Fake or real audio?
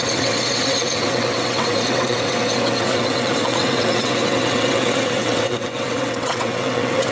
fake